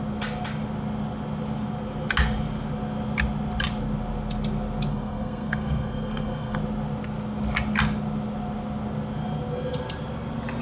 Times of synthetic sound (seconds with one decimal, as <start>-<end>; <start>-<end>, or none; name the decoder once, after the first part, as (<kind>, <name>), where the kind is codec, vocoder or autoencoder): 4.9-6.6 (codec, SNAC)